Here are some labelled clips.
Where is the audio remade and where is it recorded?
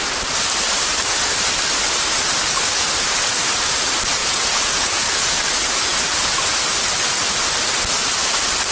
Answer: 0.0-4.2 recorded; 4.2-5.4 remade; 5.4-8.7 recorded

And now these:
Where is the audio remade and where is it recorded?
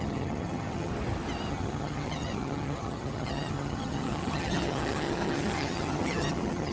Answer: 0.0-0.9 remade; 0.9-1.5 recorded; 1.5-6.7 remade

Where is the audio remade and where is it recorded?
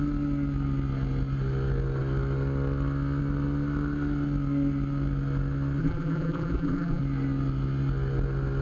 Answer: 0.0-5.8 recorded; 5.8-7.0 remade; 7.0-8.6 recorded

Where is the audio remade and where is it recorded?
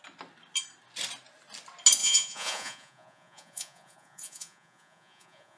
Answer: 0.0-2.0 recorded; 2.0-5.6 remade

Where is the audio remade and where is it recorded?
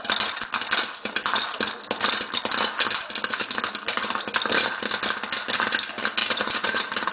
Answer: 0.0-6.2 recorded; 6.2-7.1 remade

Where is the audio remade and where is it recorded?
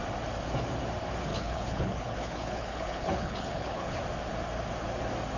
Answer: 0.0-1.3 recorded; 1.3-4.0 remade; 4.0-5.4 recorded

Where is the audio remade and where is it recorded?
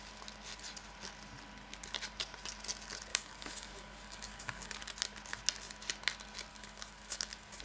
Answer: 0.0-3.1 recorded; 3.1-4.7 remade; 4.7-6.5 recorded; 6.5-7.6 remade